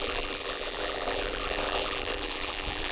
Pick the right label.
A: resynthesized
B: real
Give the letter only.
A